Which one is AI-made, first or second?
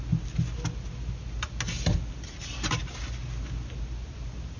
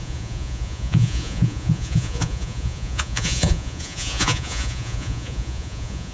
second